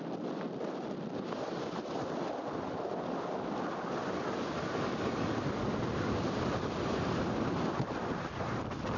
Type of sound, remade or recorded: recorded